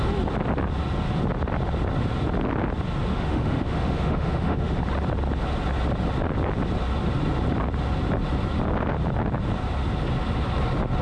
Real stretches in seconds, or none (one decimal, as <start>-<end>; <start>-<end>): 0.0-3.1; 4.8-11.0